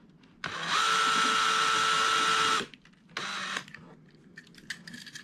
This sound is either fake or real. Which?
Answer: real